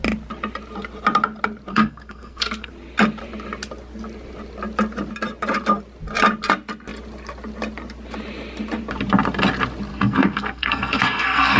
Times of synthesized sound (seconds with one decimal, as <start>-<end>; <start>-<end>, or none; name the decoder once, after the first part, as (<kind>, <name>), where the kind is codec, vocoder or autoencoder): 1.7-2.7 (codec, SNAC); 9.9-11.6